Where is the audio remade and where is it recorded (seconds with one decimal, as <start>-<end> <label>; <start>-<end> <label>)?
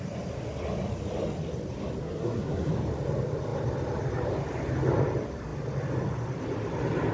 0.0-2.0 recorded; 2.0-2.7 remade; 2.7-7.1 recorded